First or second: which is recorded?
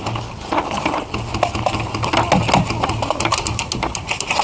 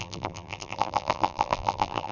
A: first